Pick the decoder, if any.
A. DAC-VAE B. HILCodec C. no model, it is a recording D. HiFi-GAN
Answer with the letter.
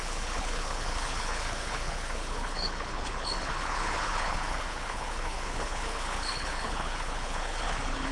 B